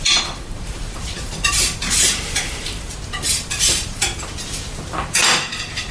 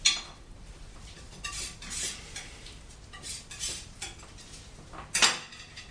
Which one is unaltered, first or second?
second